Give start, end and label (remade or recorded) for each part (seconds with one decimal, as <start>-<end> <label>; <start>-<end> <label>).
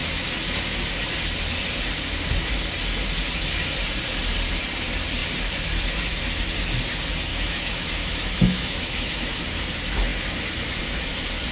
0.0-7.3 recorded; 7.3-9.4 remade; 9.4-11.5 recorded